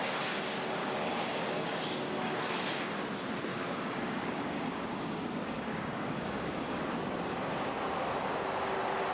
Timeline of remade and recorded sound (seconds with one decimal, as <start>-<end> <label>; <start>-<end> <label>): 0.0-0.8 recorded; 0.8-2.4 remade; 2.4-3.5 recorded; 3.5-6.8 remade; 6.8-9.1 recorded